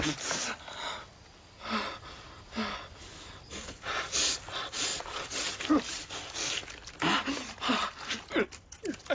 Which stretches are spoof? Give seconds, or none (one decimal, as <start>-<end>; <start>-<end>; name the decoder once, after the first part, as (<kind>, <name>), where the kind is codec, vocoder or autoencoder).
4.9-5.6 (vocoder, WaveNeXt)